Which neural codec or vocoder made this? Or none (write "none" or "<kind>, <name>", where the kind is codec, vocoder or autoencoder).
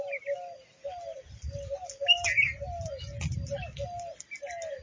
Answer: none